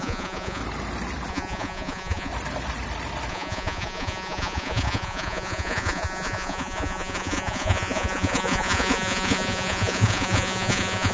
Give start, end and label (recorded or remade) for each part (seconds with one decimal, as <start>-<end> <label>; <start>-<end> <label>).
0.0-0.6 remade; 0.6-1.3 recorded; 1.3-2.3 remade; 2.3-3.3 recorded; 3.3-11.1 remade